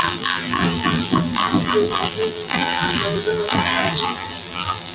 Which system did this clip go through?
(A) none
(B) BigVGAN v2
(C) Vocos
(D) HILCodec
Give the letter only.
B